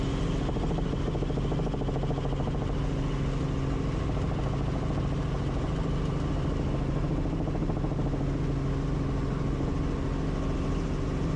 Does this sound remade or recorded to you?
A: recorded